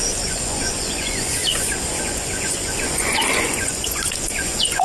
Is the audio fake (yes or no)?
yes